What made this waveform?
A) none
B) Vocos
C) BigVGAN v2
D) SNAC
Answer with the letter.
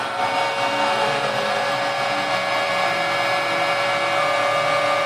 A